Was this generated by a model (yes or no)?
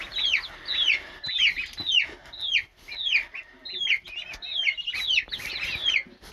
no